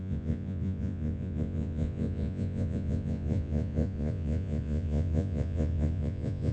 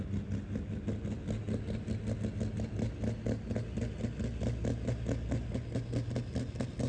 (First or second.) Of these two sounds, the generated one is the first